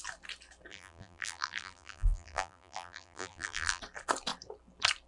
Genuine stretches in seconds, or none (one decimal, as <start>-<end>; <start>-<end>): 0.0-0.7; 3.8-5.1

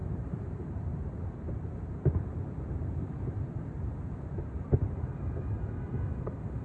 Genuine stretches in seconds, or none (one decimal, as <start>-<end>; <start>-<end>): none

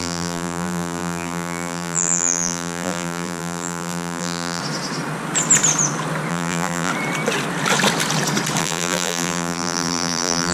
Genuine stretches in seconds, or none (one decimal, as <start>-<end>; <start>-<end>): 4.6-6.3; 6.9-8.6

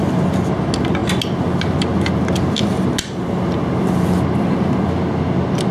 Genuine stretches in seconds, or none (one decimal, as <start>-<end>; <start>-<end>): 0.0-5.7

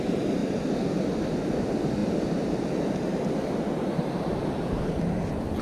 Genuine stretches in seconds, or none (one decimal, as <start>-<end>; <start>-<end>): 0.0-2.0; 4.9-5.6

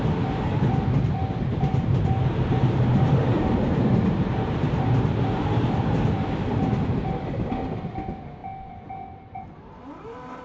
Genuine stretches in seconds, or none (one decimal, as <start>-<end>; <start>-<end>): 0.0-1.2; 6.1-10.4

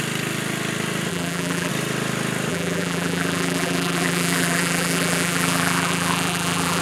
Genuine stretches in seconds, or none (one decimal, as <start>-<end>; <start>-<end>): 0.0-1.1; 1.7-2.5

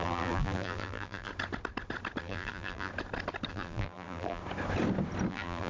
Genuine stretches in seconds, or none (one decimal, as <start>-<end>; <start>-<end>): 1.3-2.2; 2.9-3.5; 4.4-5.3